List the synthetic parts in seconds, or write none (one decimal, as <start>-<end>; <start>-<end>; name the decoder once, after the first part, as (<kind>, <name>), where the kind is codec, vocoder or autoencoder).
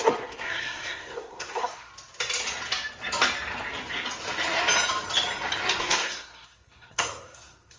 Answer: 0.0-1.9 (codec, SNAC); 5.8-7.8